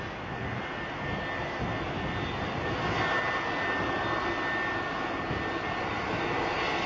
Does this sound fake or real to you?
real